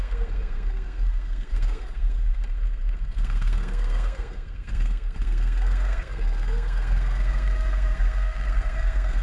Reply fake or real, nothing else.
fake